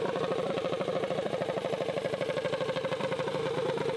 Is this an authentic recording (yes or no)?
yes